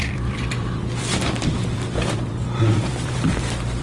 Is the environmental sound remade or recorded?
remade